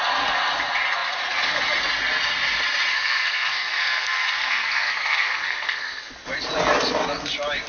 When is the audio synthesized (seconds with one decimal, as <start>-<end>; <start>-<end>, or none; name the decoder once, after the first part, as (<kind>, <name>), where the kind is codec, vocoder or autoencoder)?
2.9-6.1 (codec, SNAC)